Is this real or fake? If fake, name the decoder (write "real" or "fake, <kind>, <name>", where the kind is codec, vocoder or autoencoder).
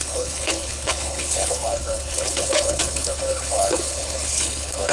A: fake, codec, HILCodec